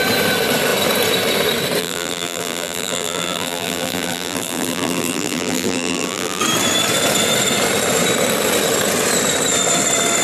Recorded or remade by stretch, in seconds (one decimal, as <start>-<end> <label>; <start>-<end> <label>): 0.0-1.8 recorded; 1.8-6.4 remade; 6.4-10.2 recorded